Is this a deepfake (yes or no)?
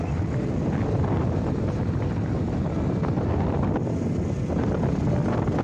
no